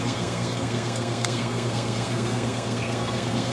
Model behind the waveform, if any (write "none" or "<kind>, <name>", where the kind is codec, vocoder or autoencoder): codec, SNAC